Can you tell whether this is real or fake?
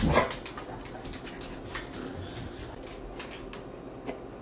real